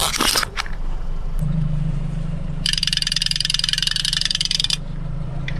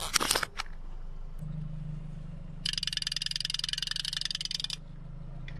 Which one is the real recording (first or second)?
second